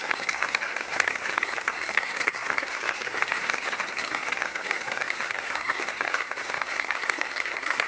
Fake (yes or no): yes